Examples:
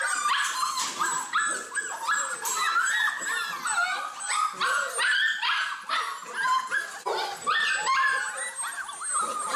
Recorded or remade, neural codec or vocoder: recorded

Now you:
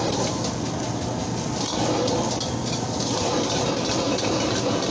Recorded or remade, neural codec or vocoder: recorded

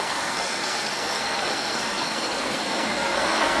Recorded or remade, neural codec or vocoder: remade, codec, SNAC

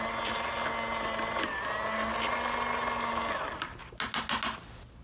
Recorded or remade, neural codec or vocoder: recorded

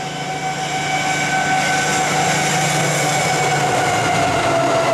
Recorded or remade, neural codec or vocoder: recorded